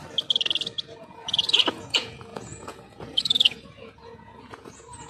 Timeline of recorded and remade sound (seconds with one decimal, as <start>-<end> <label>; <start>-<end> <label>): 0.0-0.8 recorded; 0.8-5.1 remade